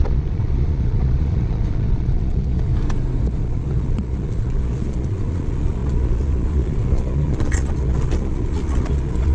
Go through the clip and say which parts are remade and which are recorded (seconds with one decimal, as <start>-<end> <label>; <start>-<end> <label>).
0.0-2.7 remade; 2.7-3.4 recorded; 3.4-9.3 remade